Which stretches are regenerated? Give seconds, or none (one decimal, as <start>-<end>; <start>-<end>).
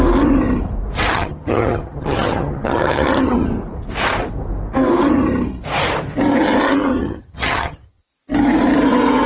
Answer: 1.1-3.5; 6.9-8.0